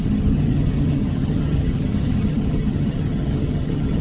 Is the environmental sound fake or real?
fake